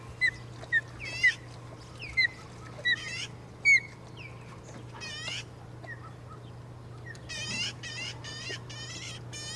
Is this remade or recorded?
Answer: recorded